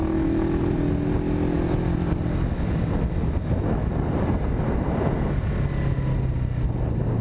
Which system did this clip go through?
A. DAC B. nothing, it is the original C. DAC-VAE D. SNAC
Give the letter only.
B